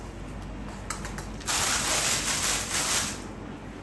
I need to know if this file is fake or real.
real